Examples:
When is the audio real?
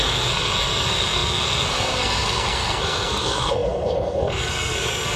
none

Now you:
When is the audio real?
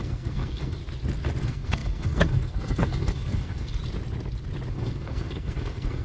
0.8-1.4; 3.8-4.7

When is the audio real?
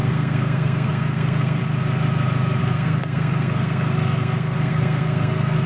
1.6-2.6